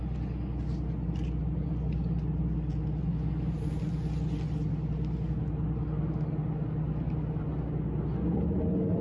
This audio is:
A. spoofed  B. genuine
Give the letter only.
B